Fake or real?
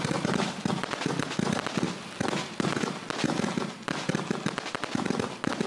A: real